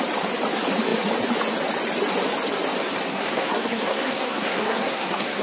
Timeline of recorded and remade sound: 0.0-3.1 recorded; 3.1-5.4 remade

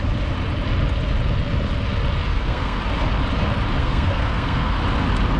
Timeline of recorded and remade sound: 0.0-2.3 recorded; 2.3-2.8 remade; 2.8-3.8 recorded; 3.8-4.8 remade; 4.8-5.4 recorded

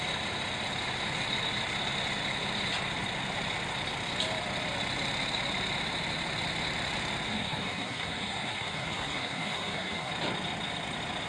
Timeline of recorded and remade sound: 0.0-7.3 recorded; 7.3-10.1 remade; 10.1-11.3 recorded

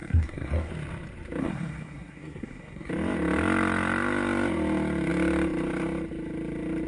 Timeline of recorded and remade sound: 0.0-0.7 remade; 0.7-1.4 recorded; 1.4-2.9 remade; 2.9-6.9 recorded

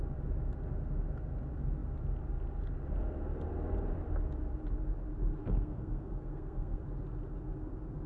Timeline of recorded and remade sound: 0.0-5.4 recorded; 5.4-6.8 remade; 6.8-8.1 recorded

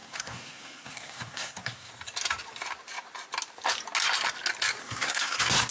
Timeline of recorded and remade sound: 0.0-1.9 remade; 1.9-4.8 recorded; 4.8-5.7 remade